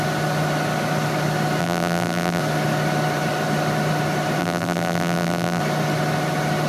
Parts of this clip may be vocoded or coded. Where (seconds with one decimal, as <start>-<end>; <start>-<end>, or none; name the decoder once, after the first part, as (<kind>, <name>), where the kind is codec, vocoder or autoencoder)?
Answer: 1.6-2.4 (vocoder, BigVGAN v2); 4.4-5.6

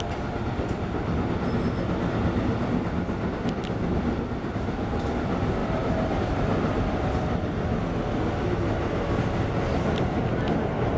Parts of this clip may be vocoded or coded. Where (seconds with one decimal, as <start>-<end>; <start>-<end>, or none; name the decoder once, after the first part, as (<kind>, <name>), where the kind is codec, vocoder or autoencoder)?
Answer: 5.6-7.8 (vocoder, BigVGAN v2)

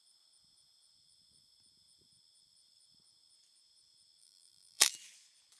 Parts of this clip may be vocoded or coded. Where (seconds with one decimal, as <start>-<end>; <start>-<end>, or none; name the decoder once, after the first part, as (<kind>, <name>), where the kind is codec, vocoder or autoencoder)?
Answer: 4.2-4.9 (vocoder, BigVGAN v2)

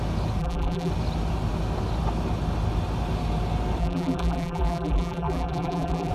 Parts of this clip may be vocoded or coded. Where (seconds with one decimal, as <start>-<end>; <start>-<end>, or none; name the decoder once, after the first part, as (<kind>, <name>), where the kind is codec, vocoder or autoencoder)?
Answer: 0.4-0.9 (vocoder, BigVGAN v2); 3.8-6.1

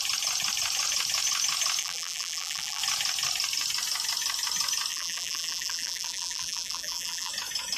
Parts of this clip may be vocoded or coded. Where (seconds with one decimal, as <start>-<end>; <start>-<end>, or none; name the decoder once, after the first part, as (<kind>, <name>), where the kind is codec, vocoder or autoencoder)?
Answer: 1.8-2.8 (vocoder, BigVGAN v2); 4.9-7.3

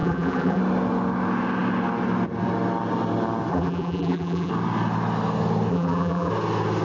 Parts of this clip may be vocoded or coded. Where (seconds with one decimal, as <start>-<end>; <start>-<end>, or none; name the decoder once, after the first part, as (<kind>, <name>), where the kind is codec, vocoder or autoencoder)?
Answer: 0.0-0.6 (vocoder, BigVGAN v2); 3.5-4.5; 5.7-6.3